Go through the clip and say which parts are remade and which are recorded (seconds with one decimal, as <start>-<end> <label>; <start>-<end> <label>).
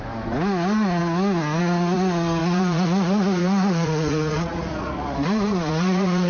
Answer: 0.0-2.4 recorded; 2.4-6.3 remade